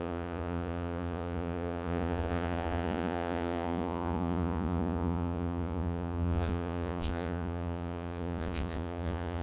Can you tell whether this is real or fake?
fake